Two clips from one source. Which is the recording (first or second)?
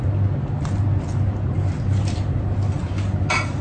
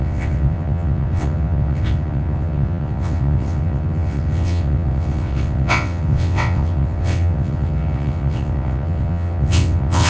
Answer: first